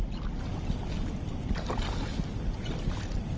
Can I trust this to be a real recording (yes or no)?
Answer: yes